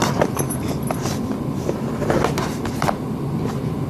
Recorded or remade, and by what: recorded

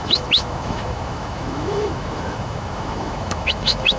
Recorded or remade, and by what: remade, autoencoder, DAC-VAE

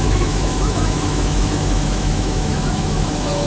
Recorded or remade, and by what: remade, autoencoder, DAC-VAE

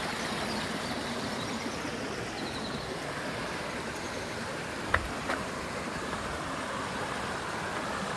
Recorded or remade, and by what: recorded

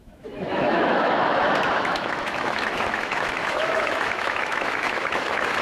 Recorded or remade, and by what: remade, autoencoder, DAC-VAE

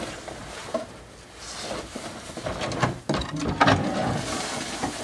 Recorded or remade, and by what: recorded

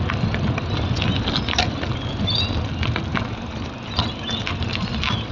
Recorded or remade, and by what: recorded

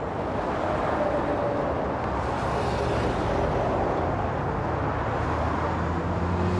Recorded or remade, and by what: recorded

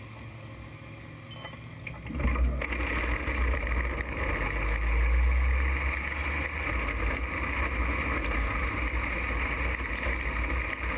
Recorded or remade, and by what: recorded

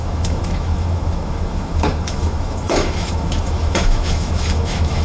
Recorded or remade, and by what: remade, autoencoder, DAC-VAE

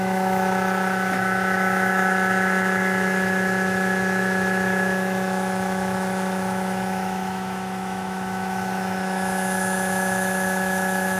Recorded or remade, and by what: remade, autoencoder, DAC-VAE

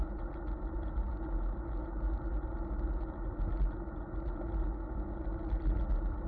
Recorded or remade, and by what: recorded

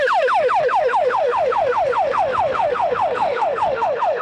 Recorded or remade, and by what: remade, autoencoder, DAC-VAE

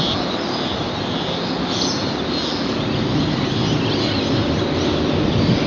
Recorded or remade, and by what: recorded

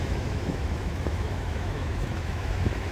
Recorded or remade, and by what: remade, autoencoder, DAC-VAE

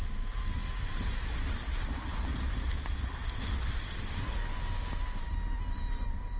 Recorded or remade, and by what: recorded